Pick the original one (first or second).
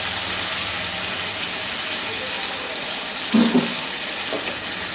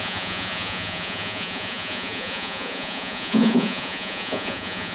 first